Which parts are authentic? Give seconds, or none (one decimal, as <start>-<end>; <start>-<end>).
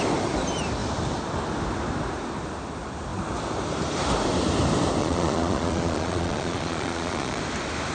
0.0-5.0; 7.4-7.9